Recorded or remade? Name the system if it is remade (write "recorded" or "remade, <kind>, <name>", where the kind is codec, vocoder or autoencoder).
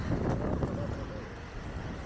recorded